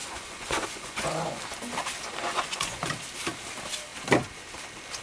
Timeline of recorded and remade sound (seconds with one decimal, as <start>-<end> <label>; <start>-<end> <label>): 0.0-1.4 remade; 1.4-2.2 recorded; 2.2-2.8 remade; 2.8-5.0 recorded